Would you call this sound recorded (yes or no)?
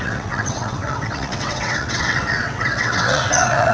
no